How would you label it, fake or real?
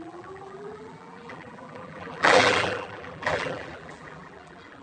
fake